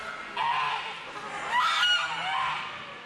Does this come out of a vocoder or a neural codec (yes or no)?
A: no